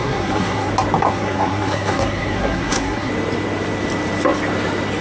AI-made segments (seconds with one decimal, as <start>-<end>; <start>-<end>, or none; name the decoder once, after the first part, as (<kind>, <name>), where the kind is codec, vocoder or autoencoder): 0.0-0.7 (codec, SNAC); 1.1-3.1